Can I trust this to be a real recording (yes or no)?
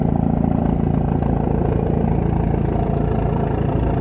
yes